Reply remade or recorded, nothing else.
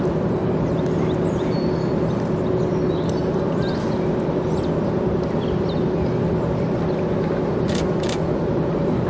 recorded